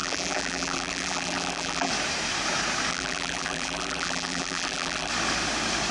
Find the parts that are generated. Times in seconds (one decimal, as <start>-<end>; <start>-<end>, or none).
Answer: 0.0-1.9; 2.9-5.1